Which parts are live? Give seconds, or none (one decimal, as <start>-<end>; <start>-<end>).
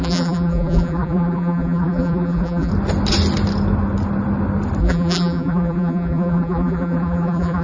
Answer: 2.7-4.8